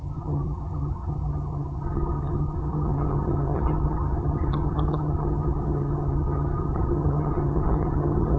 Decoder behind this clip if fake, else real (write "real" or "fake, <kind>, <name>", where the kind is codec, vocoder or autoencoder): fake, vocoder, HiFi-GAN